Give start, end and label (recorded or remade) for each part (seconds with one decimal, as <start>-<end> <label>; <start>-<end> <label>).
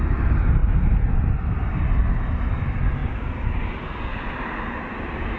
0.0-3.0 recorded; 3.0-3.6 remade; 3.6-5.4 recorded